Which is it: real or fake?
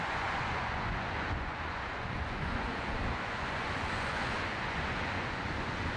fake